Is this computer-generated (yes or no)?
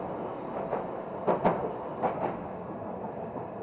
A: no